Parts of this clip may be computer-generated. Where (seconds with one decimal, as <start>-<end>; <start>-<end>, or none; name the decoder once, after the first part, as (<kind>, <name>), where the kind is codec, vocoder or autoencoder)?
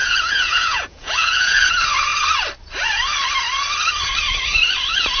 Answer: 0.0-1.7 (vocoder, Vocos)